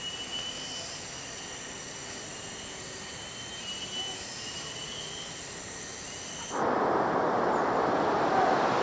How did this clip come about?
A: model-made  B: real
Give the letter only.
B